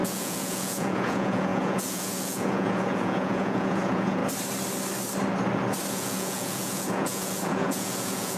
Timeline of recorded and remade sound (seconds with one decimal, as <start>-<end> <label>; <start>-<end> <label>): 0.0-4.2 remade; 4.2-5.9 recorded; 5.9-8.4 remade

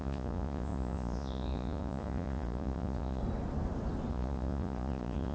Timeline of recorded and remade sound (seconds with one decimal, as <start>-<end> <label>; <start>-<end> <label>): 0.0-3.2 remade; 3.2-4.1 recorded; 4.1-5.3 remade

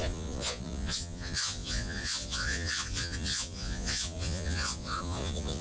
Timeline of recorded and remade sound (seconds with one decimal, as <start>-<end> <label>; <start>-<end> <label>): 0.0-5.6 remade

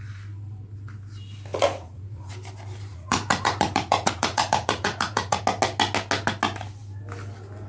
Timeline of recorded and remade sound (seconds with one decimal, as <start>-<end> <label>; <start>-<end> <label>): 0.0-1.5 recorded; 1.5-2.3 remade; 2.3-2.9 recorded; 2.9-5.4 remade; 5.4-7.7 recorded